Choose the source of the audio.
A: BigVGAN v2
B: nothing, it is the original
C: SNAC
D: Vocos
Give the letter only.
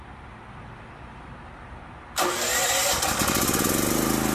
B